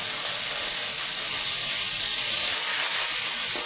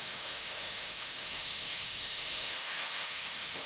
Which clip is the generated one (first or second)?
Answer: second